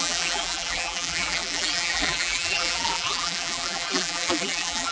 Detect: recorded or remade remade